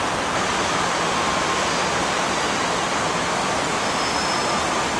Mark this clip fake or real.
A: real